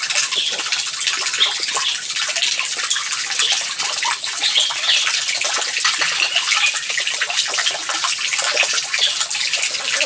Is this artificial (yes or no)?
no